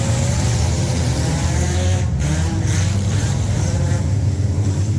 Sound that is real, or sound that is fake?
fake